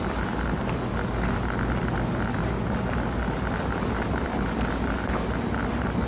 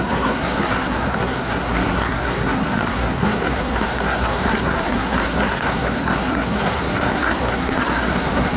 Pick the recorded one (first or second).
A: first